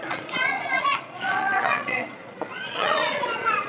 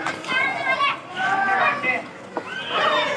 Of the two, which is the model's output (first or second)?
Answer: first